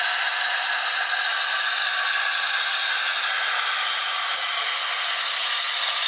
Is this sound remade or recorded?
recorded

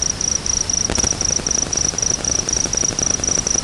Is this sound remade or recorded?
recorded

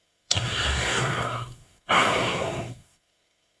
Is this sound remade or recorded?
remade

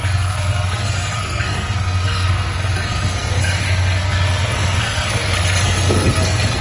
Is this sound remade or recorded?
remade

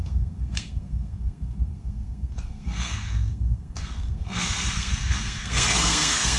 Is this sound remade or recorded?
remade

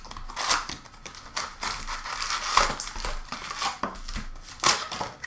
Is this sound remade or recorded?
recorded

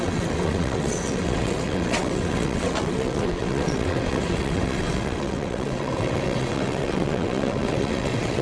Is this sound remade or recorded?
remade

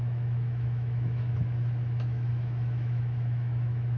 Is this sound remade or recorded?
remade